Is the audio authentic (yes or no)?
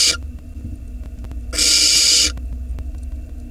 yes